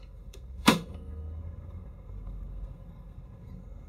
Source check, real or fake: fake